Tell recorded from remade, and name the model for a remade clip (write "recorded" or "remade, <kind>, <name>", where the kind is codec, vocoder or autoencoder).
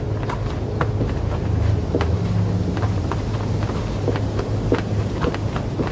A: recorded